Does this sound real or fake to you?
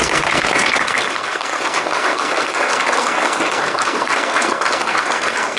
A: fake